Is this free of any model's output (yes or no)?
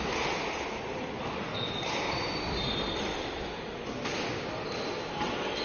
yes